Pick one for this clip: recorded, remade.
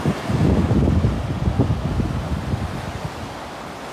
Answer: recorded